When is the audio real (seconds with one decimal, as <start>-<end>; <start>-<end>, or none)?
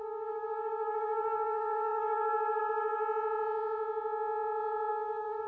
3.0-4.9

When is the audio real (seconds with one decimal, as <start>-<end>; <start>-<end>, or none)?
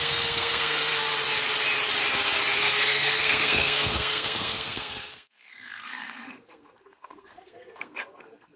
0.9-2.6